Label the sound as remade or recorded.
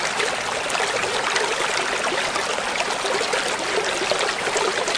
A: recorded